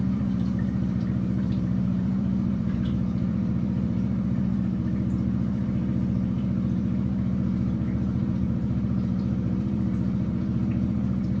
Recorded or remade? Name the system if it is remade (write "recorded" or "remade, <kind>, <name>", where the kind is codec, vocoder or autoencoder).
remade, vocoder, BigVGAN v2